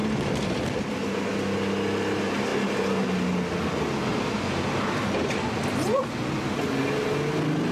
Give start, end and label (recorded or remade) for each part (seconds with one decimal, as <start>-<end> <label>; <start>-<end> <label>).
0.0-7.7 recorded

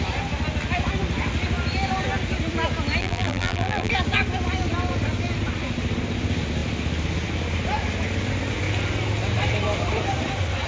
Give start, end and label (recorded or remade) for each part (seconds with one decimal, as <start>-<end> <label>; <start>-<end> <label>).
0.0-3.0 recorded; 3.0-3.9 remade; 3.9-10.7 recorded

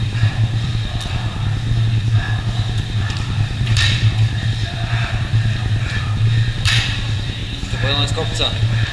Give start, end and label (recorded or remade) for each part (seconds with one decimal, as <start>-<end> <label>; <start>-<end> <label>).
0.0-0.7 remade; 0.7-3.1 recorded; 3.1-7.4 remade; 7.4-8.1 recorded; 8.1-8.9 remade

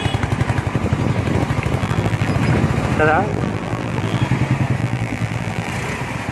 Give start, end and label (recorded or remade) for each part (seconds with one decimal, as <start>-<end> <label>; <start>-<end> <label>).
0.0-1.8 recorded; 1.8-2.3 remade; 2.3-3.3 recorded; 3.3-4.2 remade; 4.2-4.8 recorded; 4.8-5.7 remade; 5.7-6.3 recorded